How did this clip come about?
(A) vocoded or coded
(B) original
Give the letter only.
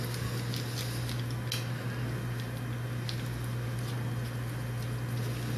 B